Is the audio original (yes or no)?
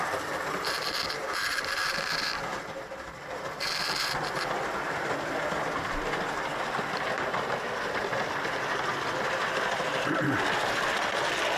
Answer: yes